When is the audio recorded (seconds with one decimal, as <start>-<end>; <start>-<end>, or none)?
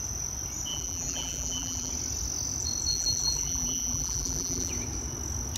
0.0-0.7; 1.9-2.9; 4.7-5.6